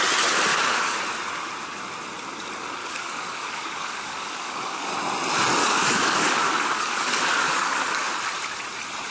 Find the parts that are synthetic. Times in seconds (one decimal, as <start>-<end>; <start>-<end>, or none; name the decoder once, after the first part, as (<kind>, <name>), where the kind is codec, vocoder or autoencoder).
0.5-1.0 (codec, DAC); 2.8-4.9; 5.6-8.1